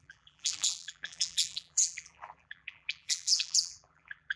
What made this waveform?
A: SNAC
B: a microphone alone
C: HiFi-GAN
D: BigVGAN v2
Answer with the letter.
D